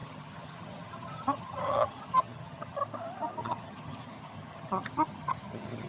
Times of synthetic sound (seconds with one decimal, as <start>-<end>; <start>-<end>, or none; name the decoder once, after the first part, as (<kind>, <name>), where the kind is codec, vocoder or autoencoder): 0.0-2.8 (vocoder, HiFi-GAN); 3.4-5.9